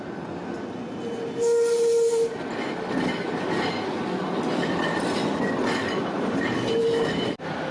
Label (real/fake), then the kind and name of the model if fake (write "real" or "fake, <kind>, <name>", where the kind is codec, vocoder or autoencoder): real